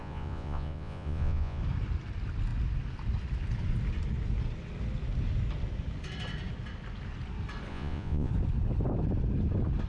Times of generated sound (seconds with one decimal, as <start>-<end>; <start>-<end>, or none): 0.0-1.6; 7.7-8.3